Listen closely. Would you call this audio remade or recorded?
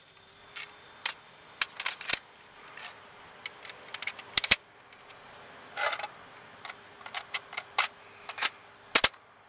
recorded